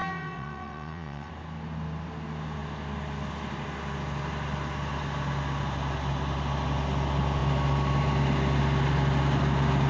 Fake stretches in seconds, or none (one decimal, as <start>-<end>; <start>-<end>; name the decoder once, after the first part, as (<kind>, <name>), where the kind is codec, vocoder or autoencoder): 0.0-1.3 (vocoder, WaveNeXt)

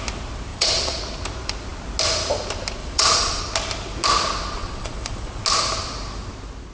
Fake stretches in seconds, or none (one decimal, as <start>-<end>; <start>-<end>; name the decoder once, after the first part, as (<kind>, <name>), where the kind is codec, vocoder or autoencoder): 0.5-1.0 (vocoder, Vocos); 2.8-3.4; 4.6-5.4